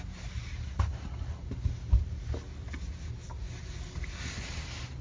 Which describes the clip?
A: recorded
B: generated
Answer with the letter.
A